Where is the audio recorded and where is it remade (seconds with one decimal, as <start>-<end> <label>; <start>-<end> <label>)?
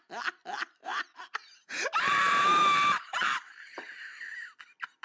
0.0-0.8 recorded; 0.8-3.8 remade; 3.8-5.0 recorded